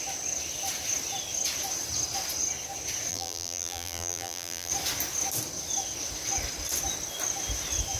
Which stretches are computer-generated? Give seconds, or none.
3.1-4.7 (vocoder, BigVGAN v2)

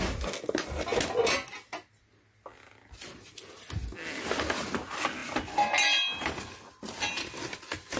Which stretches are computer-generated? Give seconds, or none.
none

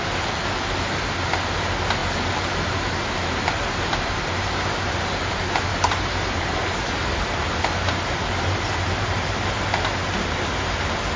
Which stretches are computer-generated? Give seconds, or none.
2.0-5.0 (vocoder, BigVGAN v2); 5.7-10.7